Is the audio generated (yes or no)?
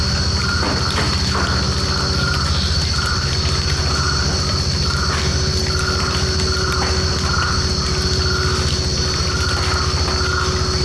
no